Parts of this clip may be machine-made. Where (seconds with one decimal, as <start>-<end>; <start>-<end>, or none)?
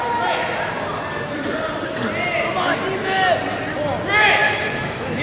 4.4-5.2